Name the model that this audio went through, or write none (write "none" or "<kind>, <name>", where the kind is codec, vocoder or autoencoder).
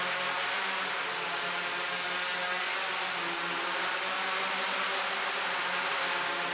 none